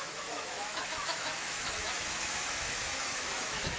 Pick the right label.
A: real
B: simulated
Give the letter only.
B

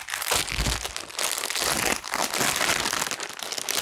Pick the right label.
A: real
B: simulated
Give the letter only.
A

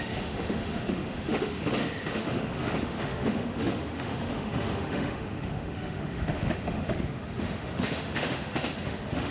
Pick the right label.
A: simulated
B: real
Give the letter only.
A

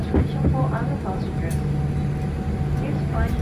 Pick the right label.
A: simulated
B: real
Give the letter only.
B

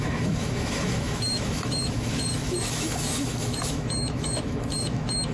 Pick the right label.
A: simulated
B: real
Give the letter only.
A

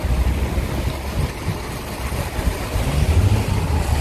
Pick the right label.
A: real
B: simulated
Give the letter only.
A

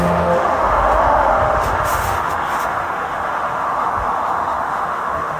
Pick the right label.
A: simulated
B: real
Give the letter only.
A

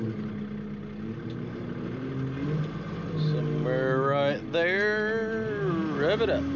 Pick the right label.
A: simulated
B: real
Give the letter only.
B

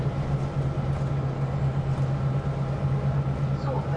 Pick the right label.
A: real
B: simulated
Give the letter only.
A